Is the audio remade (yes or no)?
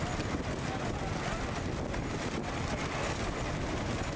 no